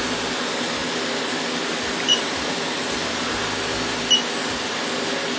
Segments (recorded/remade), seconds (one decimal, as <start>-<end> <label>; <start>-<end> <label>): 0.0-5.4 recorded

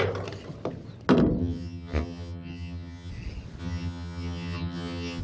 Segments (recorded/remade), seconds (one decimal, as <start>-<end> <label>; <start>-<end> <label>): 0.0-1.4 recorded; 1.4-3.1 remade; 3.1-3.6 recorded; 3.6-5.2 remade

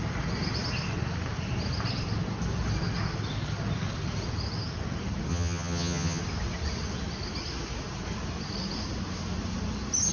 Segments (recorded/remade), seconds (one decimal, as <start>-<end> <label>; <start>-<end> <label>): 0.0-5.3 recorded; 5.3-6.2 remade; 6.2-10.1 recorded